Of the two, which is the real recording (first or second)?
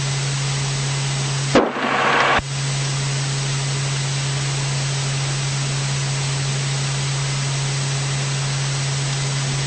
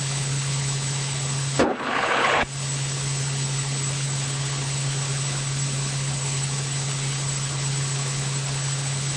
first